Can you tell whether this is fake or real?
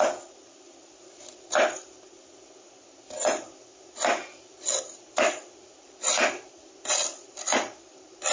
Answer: real